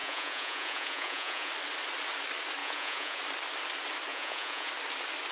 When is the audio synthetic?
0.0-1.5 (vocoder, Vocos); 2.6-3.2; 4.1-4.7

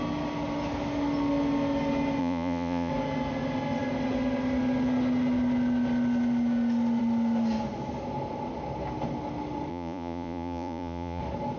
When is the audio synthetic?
2.2-2.9 (vocoder, Vocos); 9.7-11.2

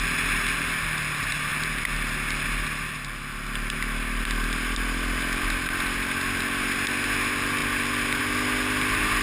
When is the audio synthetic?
none

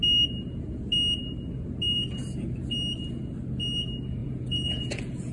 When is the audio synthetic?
4.2-5.3 (vocoder, Vocos)

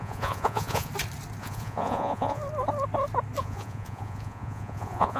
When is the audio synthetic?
0.0-0.9 (vocoder, Vocos); 1.4-2.4; 3.4-5.2

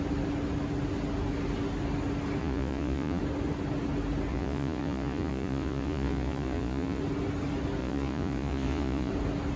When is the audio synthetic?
2.4-3.2 (vocoder, Vocos); 4.3-7.0; 7.8-9.1

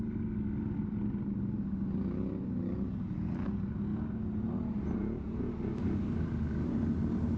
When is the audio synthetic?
5.0-5.5 (vocoder, Vocos)